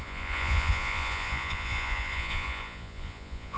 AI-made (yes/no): yes